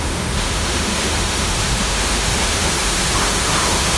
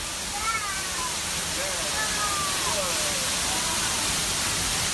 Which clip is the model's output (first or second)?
first